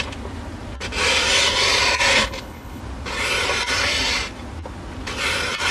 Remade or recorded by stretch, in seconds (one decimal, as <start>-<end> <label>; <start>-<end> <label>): 0.0-2.1 recorded; 2.1-2.8 remade; 2.8-5.7 recorded